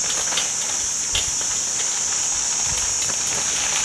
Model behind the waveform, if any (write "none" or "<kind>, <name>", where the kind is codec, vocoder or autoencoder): none